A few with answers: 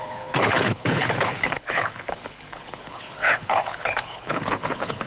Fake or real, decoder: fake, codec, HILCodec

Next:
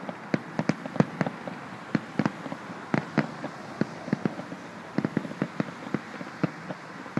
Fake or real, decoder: real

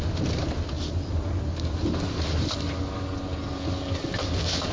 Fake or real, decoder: real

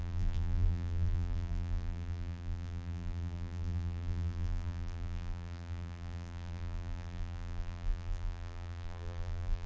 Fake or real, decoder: fake, vocoder, BigVGAN v2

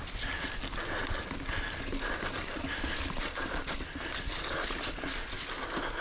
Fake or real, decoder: real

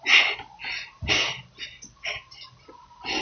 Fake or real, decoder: real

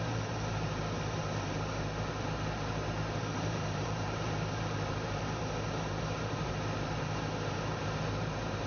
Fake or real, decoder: fake, vocoder, BigVGAN v2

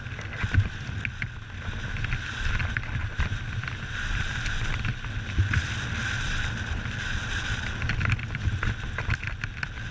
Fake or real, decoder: real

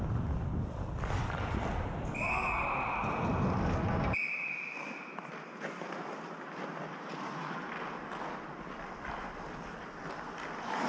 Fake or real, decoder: real